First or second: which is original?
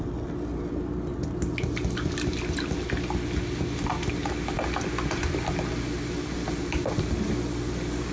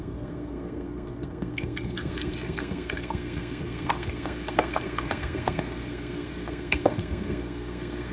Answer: first